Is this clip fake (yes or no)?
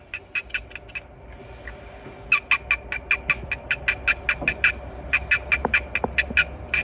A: no